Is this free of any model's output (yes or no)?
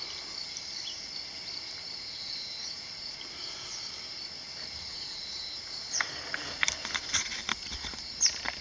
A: yes